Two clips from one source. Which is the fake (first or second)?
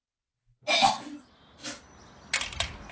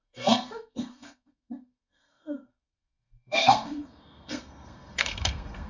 second